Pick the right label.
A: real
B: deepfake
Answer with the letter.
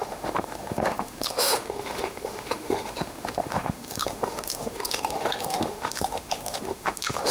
B